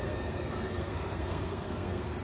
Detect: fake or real fake